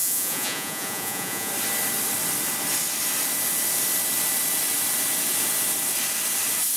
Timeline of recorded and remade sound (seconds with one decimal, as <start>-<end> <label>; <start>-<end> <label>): 0.0-1.5 remade; 1.5-6.8 recorded